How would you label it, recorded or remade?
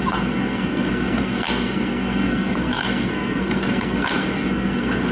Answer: remade